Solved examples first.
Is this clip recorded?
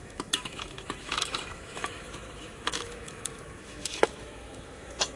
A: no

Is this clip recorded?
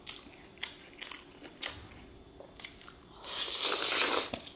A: yes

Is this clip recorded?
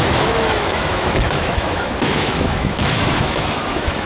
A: no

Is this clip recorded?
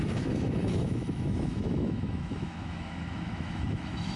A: no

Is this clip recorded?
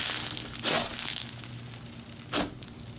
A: yes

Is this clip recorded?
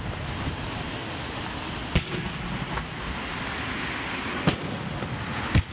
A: yes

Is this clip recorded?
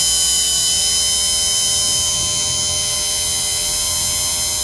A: yes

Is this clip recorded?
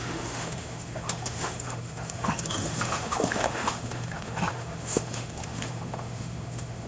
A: no